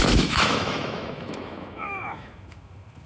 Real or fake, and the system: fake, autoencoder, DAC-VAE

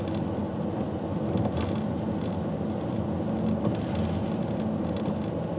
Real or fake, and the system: real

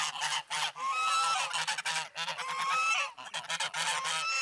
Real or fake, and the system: real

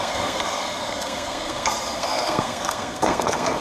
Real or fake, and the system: fake, codec, SNAC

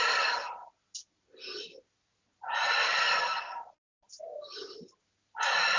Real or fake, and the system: real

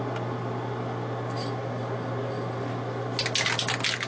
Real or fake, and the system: real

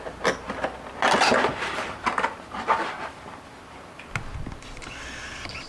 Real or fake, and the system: real